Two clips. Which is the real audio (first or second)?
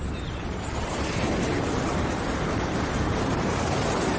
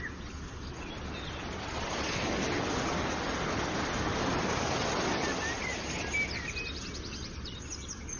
second